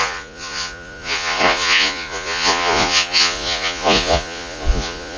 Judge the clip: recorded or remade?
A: remade